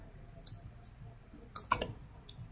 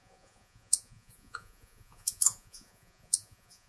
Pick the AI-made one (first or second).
second